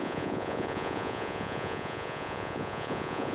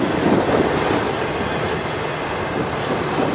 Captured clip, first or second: second